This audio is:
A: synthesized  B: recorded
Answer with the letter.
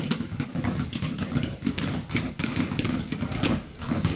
A